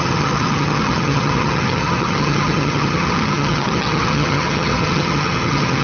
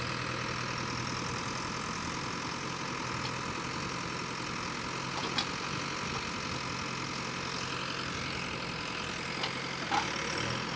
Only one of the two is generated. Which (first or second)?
first